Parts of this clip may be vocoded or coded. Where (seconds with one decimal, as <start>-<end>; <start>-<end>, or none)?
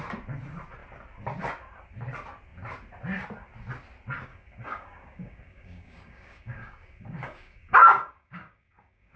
4.3-9.2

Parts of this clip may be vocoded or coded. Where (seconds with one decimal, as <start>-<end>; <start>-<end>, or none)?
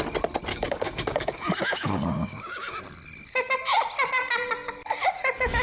0.5-2.8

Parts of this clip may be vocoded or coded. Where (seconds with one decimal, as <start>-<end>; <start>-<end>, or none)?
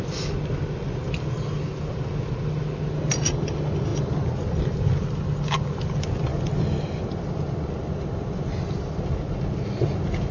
none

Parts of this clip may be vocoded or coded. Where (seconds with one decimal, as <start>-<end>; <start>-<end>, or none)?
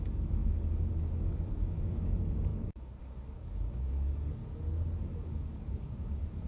0.0-4.4; 5.0-6.5